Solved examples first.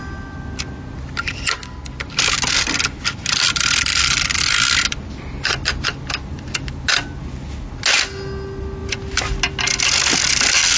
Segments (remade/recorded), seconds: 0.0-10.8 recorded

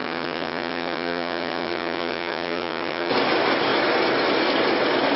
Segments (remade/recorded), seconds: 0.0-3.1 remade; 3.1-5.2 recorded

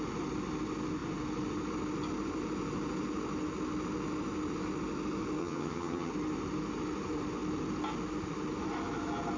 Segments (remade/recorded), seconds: 0.0-5.4 recorded; 5.4-6.1 remade; 6.1-9.4 recorded

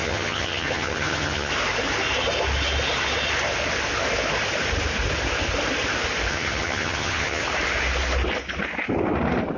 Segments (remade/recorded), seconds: 0.0-1.5 remade; 1.5-6.3 recorded; 6.3-7.4 remade; 7.4-9.6 recorded

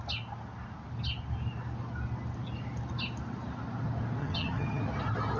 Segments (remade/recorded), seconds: 0.0-4.2 recorded; 4.2-4.8 remade; 4.8-5.4 recorded

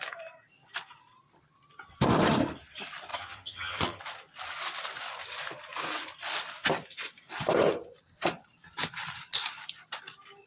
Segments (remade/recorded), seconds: 0.0-3.1 recorded; 3.1-4.0 remade; 4.0-10.5 recorded